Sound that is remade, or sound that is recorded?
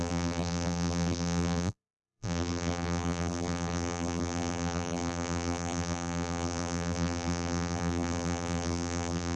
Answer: remade